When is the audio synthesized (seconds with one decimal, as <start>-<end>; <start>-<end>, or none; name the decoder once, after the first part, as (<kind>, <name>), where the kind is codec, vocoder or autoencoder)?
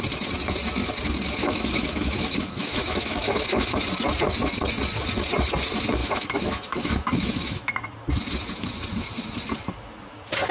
1.4-3.8 (autoencoder, DAC-VAE); 6.0-7.7